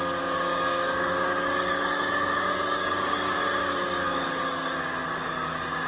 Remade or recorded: remade